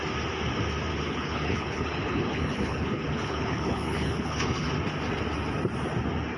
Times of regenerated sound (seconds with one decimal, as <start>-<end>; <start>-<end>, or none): 0.9-4.7